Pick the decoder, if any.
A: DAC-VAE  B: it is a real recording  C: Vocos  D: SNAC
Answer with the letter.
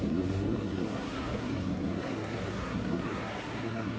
D